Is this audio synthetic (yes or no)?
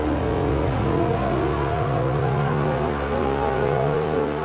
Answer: yes